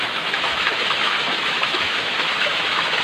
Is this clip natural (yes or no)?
no